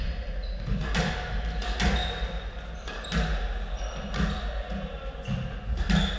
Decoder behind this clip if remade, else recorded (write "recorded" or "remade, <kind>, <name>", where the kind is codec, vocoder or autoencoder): recorded